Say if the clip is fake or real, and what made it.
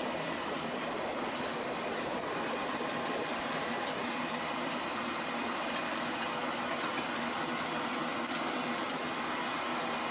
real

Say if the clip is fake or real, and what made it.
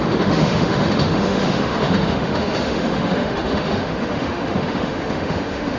fake, autoencoder, DAC-VAE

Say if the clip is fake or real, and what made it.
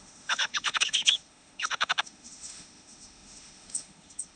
fake, autoencoder, DAC-VAE